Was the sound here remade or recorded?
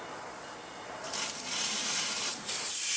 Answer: remade